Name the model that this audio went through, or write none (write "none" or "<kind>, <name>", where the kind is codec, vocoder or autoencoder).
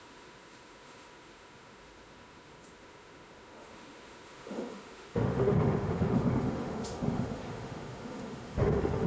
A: autoencoder, DAC-VAE